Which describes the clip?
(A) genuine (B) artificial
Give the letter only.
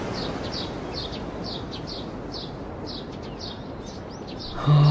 A